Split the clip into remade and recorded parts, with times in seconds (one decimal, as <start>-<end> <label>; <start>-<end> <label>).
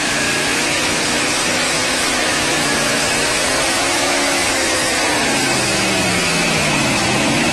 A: 0.0-7.5 remade